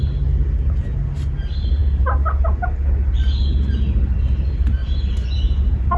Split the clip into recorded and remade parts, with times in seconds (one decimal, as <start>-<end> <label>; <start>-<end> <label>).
0.0-4.8 recorded; 4.8-5.3 remade; 5.3-6.0 recorded